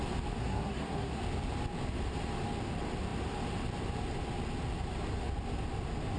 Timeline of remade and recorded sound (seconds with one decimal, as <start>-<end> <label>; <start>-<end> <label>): 0.0-0.4 recorded; 0.4-1.2 remade; 1.2-6.2 recorded